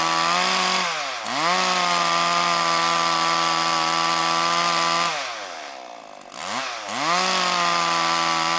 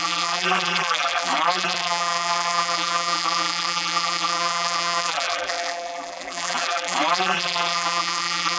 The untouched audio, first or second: first